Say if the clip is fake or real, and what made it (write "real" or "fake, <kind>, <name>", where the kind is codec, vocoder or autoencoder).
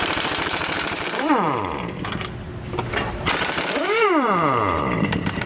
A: fake, vocoder, BigVGAN v2